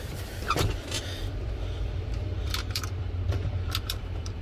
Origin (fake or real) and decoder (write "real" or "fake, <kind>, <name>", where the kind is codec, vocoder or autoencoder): fake, vocoder, BigVGAN v2